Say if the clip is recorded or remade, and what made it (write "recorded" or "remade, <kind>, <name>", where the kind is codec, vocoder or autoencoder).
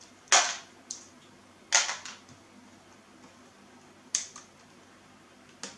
recorded